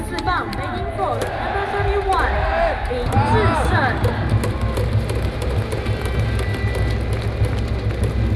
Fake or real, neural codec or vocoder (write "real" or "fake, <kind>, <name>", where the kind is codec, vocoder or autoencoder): real